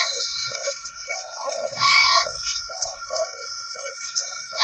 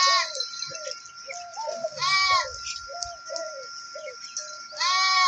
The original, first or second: second